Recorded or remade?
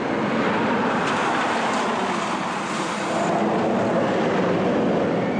recorded